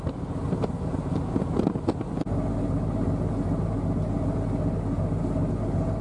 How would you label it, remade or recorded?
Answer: recorded